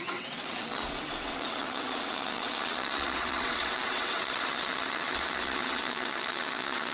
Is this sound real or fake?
fake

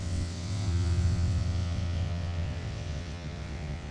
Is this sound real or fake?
fake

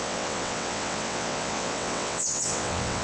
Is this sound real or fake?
fake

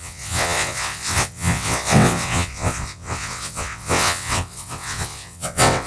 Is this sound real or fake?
fake